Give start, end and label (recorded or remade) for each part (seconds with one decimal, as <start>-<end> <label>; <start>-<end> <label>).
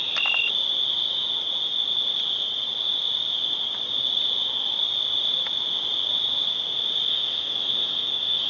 0.0-7.1 recorded; 7.1-8.5 remade